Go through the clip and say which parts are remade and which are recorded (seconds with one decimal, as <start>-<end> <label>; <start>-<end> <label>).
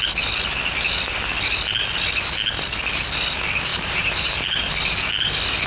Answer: 0.0-3.7 recorded; 3.7-4.7 remade; 4.7-5.7 recorded